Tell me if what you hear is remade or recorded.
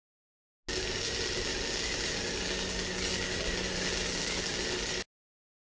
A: recorded